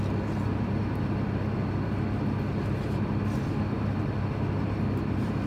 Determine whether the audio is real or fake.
real